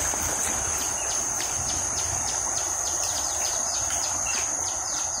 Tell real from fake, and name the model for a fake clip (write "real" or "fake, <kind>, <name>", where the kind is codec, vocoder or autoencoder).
real